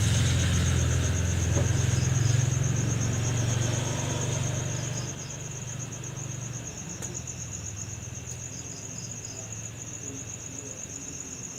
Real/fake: real